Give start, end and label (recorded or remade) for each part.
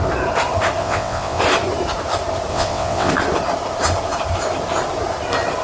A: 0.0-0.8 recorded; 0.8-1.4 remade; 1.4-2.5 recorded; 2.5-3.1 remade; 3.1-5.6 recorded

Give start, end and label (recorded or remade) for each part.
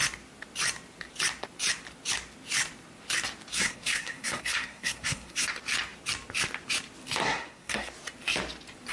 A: 0.0-3.5 recorded; 3.5-5.5 remade; 5.5-7.2 recorded; 7.2-7.9 remade; 7.9-8.9 recorded